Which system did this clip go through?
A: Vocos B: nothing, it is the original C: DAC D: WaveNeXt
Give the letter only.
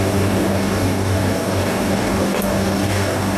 C